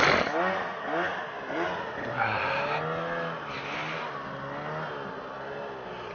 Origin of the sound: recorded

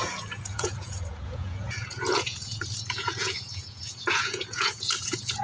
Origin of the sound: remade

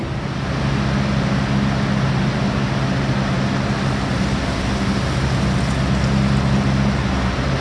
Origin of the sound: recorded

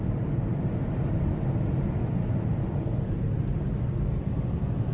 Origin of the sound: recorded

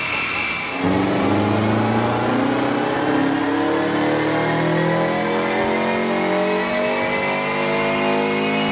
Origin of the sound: recorded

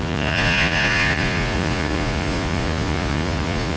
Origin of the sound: remade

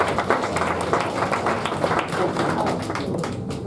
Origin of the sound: recorded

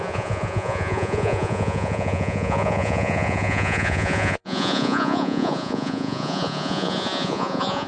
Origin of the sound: remade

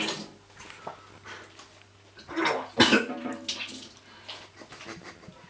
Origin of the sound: recorded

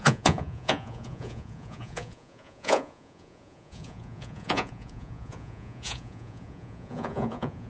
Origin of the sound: remade